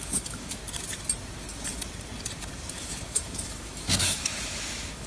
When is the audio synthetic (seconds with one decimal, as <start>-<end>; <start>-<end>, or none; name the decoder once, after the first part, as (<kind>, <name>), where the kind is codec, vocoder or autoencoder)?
0.0-0.6 (autoencoder, DAC-VAE); 2.7-5.1